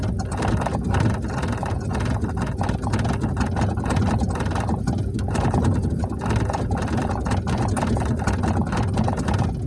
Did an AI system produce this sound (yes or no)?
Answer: no